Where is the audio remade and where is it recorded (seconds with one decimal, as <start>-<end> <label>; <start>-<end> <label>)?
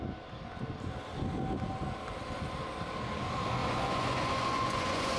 0.0-3.6 recorded; 3.6-5.2 remade